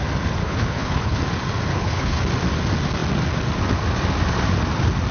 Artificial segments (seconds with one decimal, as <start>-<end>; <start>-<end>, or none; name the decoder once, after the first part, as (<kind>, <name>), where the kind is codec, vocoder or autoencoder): 0.4-1.2 (codec, HILCodec); 1.7-2.2